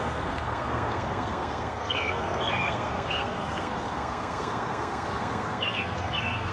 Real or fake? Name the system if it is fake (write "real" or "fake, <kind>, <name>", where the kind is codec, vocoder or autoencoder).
fake, codec, SNAC